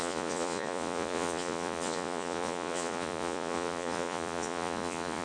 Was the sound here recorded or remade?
remade